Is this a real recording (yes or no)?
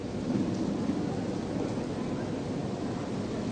yes